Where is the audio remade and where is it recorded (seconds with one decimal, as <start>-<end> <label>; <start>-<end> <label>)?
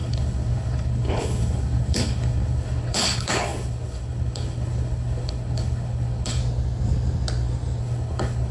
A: 0.0-6.4 remade; 6.4-7.8 recorded; 7.8-8.5 remade